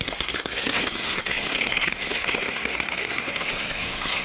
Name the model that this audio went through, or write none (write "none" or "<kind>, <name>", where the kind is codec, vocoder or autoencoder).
codec, SNAC